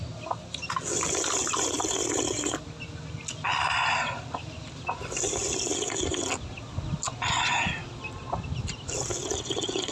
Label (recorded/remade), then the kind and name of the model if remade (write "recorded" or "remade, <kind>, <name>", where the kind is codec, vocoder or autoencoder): recorded